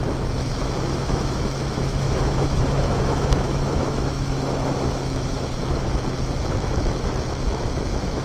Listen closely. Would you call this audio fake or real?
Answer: fake